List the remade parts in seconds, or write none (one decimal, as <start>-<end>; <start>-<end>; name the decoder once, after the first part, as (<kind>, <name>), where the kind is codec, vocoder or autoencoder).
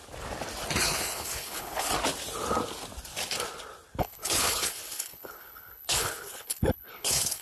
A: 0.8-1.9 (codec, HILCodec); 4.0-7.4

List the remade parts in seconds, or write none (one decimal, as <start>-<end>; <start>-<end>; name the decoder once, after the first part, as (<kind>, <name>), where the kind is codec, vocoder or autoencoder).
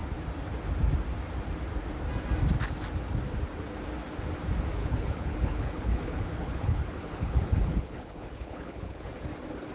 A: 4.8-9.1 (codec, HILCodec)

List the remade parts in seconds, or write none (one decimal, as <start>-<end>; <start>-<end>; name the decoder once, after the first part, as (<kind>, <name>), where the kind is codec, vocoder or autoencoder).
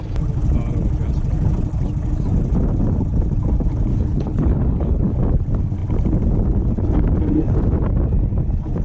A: 3.9-5.1 (codec, HILCodec)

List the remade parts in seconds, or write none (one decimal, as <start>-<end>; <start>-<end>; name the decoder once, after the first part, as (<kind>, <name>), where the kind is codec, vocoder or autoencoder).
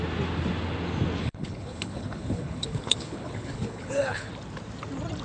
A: 1.2-4.3 (codec, HILCodec)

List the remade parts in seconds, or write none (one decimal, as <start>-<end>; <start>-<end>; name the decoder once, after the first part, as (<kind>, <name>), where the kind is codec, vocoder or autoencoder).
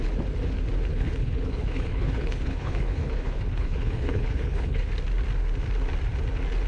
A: 0.9-4.9 (codec, HILCodec)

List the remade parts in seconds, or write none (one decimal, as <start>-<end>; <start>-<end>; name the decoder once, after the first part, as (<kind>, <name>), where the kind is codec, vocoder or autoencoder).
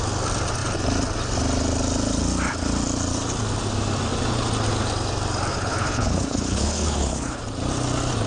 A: 5.5-7.4 (codec, HILCodec)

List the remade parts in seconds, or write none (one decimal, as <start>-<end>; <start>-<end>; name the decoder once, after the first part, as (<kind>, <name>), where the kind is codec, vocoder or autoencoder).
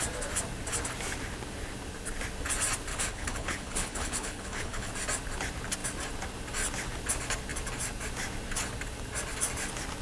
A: 2.9-4.9 (codec, HILCodec)